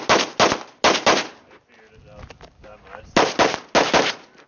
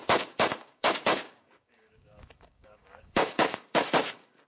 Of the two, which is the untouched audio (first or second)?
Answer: first